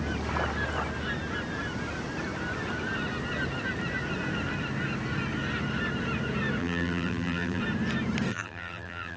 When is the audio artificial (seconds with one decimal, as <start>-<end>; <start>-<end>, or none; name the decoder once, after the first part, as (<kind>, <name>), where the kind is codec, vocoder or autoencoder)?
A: 6.6-7.6 (vocoder, BigVGAN v2); 8.3-9.2